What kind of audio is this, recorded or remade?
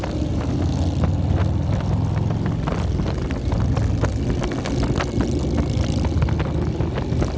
recorded